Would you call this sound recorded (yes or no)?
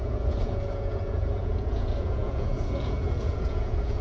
no